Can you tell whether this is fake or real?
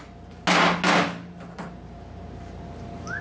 real